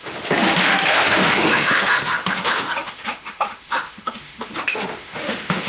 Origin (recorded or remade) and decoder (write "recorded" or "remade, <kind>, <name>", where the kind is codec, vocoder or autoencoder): remade, autoencoder, DAC-VAE